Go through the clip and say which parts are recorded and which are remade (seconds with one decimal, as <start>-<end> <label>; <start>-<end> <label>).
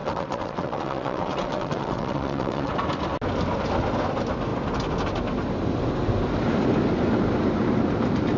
0.0-2.7 remade; 2.7-8.4 recorded